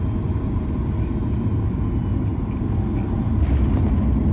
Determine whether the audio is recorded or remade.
recorded